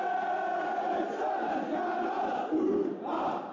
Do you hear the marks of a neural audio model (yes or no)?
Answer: no